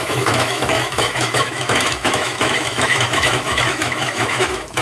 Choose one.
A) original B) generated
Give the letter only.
B